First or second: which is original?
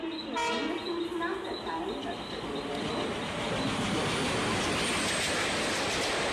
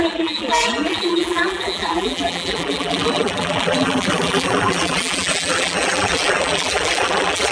first